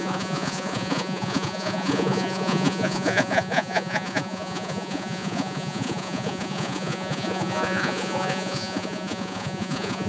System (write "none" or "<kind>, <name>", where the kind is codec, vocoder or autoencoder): vocoder, Vocos